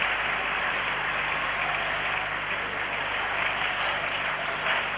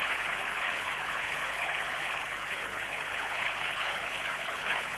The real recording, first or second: first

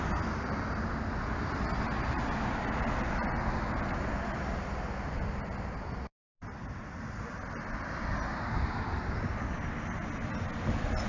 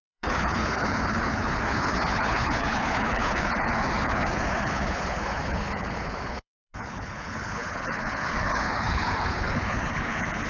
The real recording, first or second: first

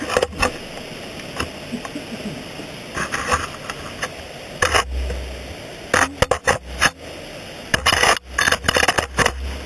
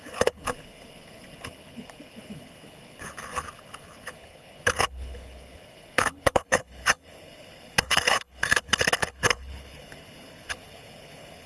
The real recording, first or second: first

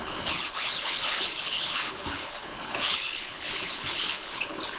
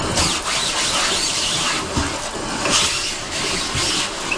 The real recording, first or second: second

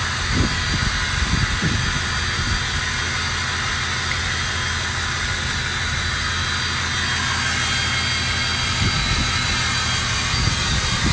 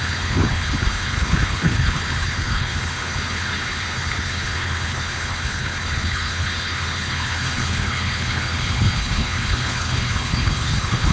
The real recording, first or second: first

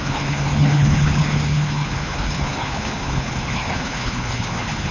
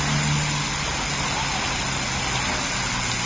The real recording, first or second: second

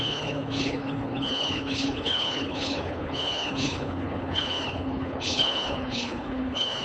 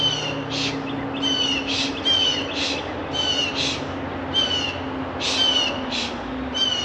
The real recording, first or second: second